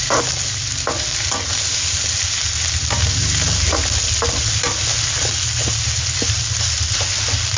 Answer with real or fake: real